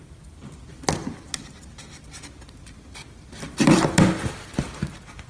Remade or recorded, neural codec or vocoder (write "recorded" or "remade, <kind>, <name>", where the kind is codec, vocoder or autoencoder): recorded